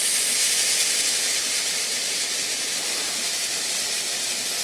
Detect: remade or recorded recorded